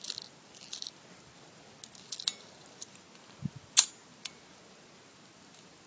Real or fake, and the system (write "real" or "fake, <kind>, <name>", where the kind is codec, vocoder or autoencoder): real